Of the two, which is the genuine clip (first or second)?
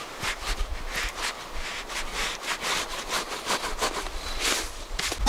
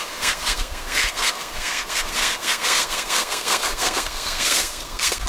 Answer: first